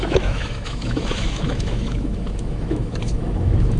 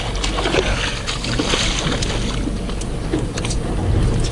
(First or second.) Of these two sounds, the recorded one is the second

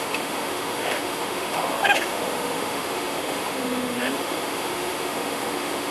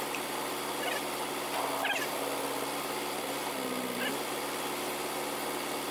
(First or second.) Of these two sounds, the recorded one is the second